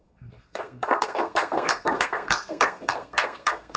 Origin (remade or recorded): remade